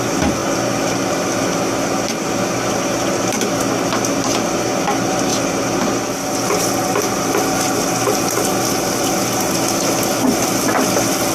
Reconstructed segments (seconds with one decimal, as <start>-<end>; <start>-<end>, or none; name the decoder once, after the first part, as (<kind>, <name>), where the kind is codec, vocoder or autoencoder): none